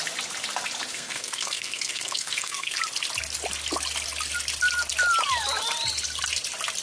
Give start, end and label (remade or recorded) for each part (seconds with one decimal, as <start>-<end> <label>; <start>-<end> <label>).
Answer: 0.0-0.9 recorded; 0.9-2.8 remade; 2.8-6.8 recorded